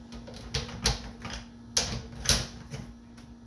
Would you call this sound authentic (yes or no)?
yes